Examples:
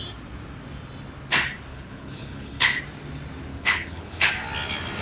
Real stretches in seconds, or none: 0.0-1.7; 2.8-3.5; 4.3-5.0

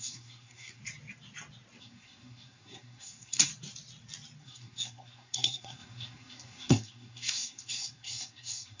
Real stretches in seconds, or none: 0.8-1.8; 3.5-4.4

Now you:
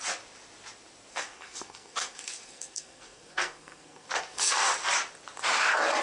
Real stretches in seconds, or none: 0.0-1.1; 4.7-6.0